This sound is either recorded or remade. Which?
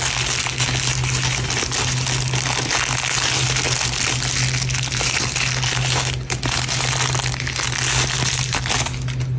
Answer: recorded